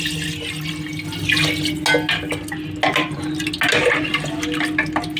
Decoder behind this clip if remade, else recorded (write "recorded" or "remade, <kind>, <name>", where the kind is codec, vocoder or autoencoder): recorded